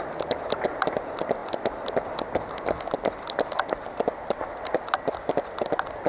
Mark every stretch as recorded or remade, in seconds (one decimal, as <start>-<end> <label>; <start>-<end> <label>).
0.0-6.1 recorded